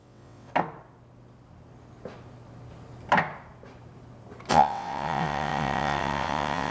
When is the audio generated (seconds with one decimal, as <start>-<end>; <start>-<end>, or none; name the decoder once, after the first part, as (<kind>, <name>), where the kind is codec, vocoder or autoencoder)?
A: 0.0-0.5 (vocoder, WaveNeXt); 4.5-6.7